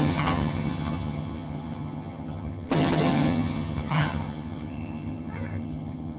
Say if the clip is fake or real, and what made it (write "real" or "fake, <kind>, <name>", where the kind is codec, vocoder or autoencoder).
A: fake, vocoder, HiFi-GAN